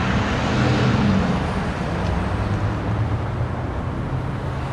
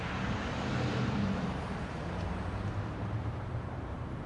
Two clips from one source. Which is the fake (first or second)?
second